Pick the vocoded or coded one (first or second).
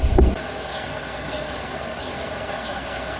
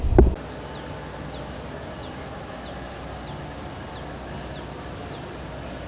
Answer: first